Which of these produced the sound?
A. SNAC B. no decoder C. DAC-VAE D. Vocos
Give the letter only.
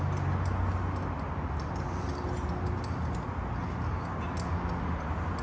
B